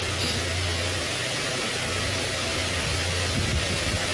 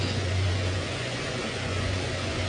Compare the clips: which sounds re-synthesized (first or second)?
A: second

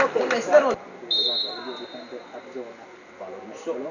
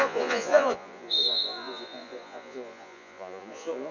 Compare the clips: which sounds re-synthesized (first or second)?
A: second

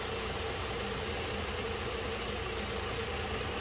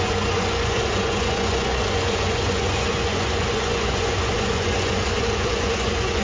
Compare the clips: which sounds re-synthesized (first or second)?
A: second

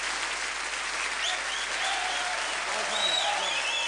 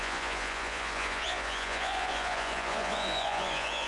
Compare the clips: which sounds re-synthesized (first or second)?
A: second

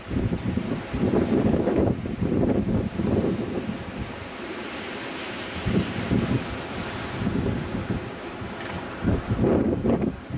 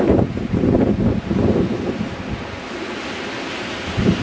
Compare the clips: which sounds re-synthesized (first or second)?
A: first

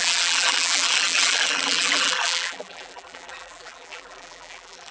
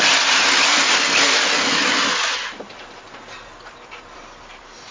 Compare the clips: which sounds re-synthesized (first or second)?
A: first